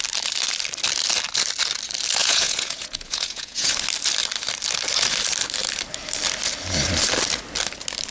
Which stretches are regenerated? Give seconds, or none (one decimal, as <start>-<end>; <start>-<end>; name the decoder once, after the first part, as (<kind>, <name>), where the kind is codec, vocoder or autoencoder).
2.2-3.7 (vocoder, Vocos)